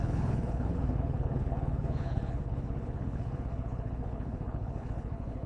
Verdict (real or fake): fake